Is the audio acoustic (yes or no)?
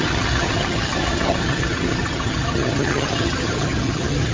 no